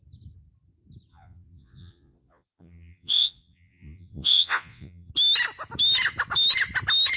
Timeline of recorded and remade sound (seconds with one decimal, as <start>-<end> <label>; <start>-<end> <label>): 0.0-1.1 recorded; 1.1-5.1 remade; 5.1-7.2 recorded